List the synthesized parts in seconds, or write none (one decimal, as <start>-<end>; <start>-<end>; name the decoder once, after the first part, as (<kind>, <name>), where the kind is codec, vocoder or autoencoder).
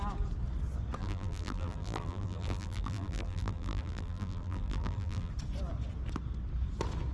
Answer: 1.0-5.3 (vocoder, BigVGAN v2)